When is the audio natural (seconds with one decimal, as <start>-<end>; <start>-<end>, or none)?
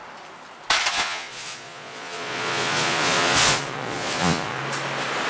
0.0-0.9; 4.6-5.3